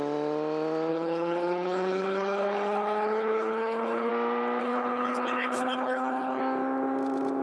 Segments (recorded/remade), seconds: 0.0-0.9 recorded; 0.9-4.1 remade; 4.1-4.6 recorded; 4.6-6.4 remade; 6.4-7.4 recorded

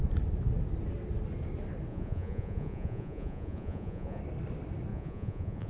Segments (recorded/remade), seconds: 0.0-1.9 recorded; 1.9-4.2 remade; 4.2-4.9 recorded; 4.9-5.7 remade

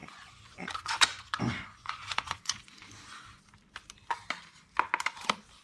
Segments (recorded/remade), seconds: 0.0-3.4 remade; 3.4-5.6 recorded

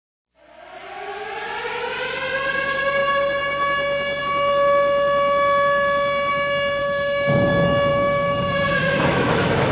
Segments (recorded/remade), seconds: 0.0-6.8 recorded; 6.8-7.5 remade; 7.5-7.9 recorded; 7.9-9.7 remade

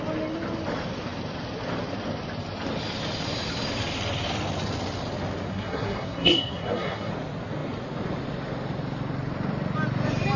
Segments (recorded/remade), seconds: 0.0-5.5 recorded; 5.5-7.1 remade; 7.1-10.4 recorded

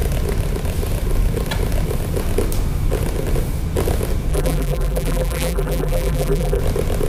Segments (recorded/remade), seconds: 0.0-4.3 recorded; 4.3-6.6 remade; 6.6-7.1 recorded

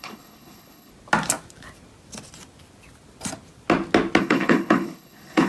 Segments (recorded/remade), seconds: 0.0-0.9 remade; 0.9-4.2 recorded; 4.2-5.5 remade

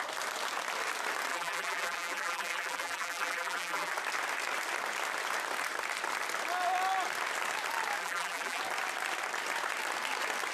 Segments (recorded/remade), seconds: 0.0-1.3 recorded; 1.3-3.9 remade; 3.9-8.0 recorded; 8.0-8.6 remade; 8.6-10.5 recorded